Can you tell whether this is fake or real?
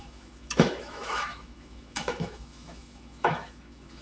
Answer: fake